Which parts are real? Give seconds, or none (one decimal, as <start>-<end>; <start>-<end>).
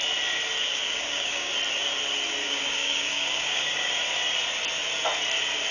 0.0-0.6; 1.5-2.4; 3.9-5.7